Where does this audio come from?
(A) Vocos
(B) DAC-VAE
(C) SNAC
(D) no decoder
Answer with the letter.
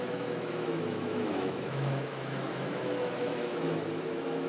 B